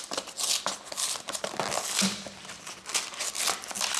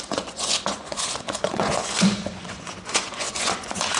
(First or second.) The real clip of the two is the first